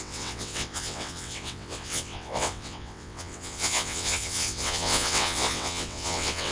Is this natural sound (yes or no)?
no